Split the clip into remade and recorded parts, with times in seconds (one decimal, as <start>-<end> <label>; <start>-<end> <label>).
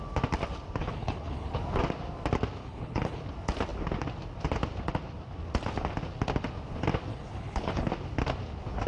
0.0-0.8 recorded; 0.8-1.5 remade; 1.5-2.6 recorded; 2.6-3.2 remade; 3.2-7.1 recorded; 7.1-7.9 remade; 7.9-8.9 recorded